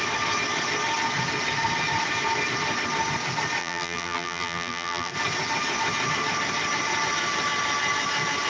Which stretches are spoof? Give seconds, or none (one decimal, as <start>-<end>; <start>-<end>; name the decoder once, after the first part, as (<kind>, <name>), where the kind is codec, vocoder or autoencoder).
3.6-5.1 (vocoder, BigVGAN v2)